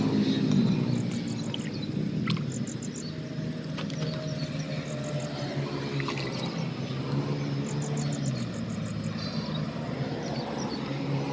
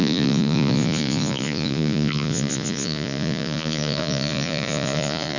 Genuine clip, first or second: first